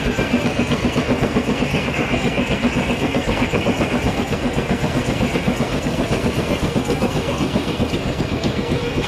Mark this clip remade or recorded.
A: remade